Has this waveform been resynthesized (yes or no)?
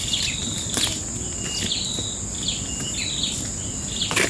no